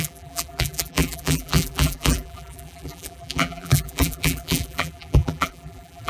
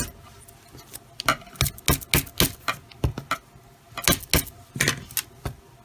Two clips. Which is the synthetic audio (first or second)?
first